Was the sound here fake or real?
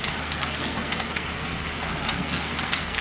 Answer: fake